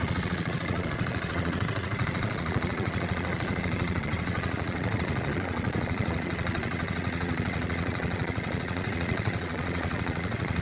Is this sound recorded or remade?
remade